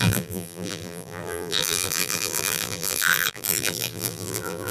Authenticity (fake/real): fake